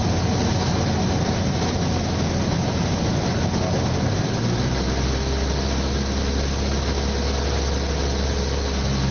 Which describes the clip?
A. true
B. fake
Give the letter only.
A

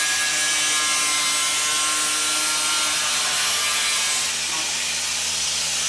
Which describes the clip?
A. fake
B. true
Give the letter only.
B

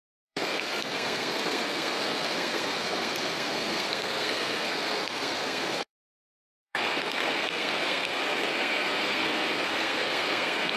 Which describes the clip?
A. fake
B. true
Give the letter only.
A